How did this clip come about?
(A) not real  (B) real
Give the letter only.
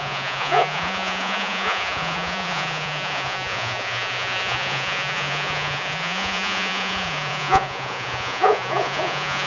A